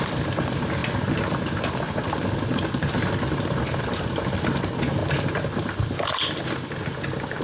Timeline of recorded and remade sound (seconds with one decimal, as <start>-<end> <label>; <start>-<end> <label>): 0.0-5.0 remade; 5.0-5.6 recorded; 5.6-7.4 remade